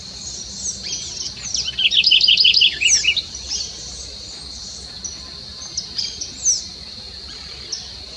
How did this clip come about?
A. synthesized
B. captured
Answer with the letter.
B